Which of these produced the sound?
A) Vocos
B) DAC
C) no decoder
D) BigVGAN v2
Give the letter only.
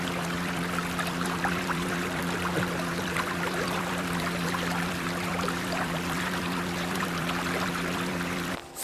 D